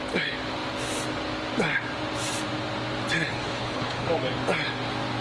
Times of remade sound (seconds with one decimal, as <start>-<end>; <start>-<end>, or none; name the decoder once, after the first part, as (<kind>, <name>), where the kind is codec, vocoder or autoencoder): 3.3-4.1 (codec, HILCodec)